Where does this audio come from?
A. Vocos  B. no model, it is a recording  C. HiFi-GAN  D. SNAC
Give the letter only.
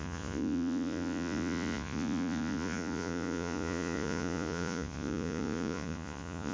A